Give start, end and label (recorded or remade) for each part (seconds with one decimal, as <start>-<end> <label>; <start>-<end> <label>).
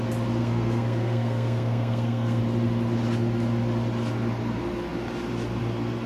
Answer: 0.0-0.4 recorded; 0.4-2.4 remade; 2.4-6.1 recorded